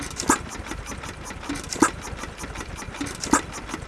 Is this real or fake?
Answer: real